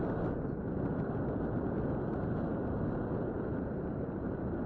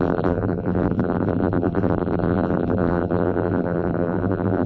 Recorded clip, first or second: first